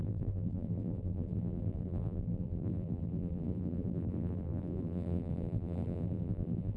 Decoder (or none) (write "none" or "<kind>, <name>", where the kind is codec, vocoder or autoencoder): vocoder, BigVGAN v2